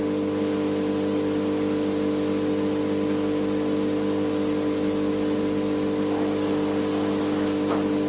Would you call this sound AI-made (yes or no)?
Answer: no